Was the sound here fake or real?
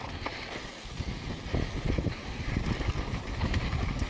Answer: real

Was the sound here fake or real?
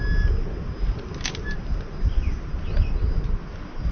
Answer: real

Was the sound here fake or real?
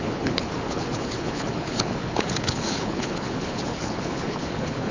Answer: fake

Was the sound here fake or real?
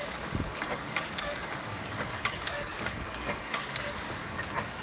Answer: fake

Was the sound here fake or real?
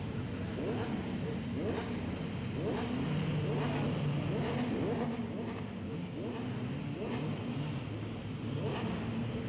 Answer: real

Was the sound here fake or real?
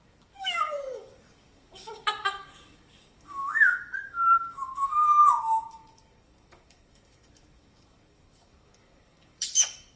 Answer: fake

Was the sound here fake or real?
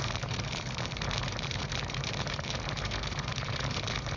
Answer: fake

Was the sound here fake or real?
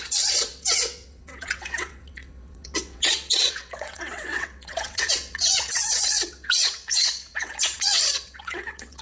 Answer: fake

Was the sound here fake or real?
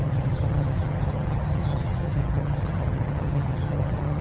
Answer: fake